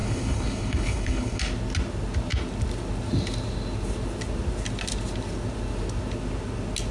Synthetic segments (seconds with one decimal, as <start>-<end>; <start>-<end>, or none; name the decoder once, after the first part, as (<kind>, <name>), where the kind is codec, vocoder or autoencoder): 0.0-1.4 (codec, HILCodec)